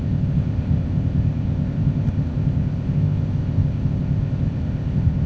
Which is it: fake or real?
fake